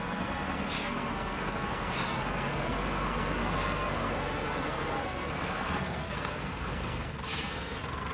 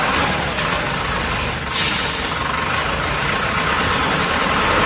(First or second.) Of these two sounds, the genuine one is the second